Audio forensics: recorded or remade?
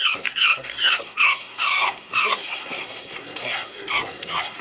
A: remade